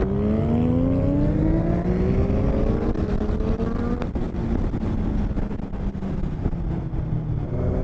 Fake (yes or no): no